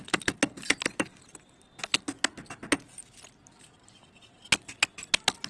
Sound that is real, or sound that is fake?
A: real